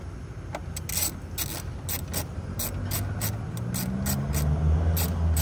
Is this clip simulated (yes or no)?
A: no